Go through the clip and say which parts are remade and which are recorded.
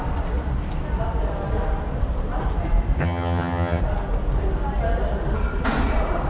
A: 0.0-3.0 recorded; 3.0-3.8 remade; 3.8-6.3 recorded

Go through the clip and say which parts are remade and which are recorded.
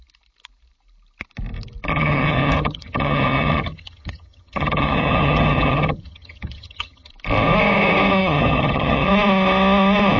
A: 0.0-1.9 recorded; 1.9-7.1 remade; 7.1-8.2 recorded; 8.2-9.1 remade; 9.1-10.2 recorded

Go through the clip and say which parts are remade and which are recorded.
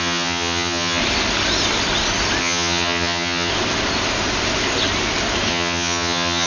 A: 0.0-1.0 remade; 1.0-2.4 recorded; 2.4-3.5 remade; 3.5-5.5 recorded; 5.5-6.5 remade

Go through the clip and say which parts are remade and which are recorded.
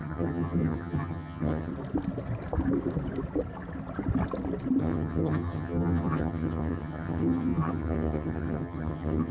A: 0.0-1.7 remade; 1.7-4.8 recorded; 4.8-9.3 remade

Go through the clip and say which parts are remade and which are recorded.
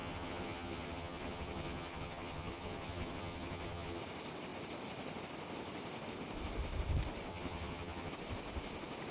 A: 0.0-4.0 remade; 4.0-7.3 recorded; 7.3-8.1 remade; 8.1-9.1 recorded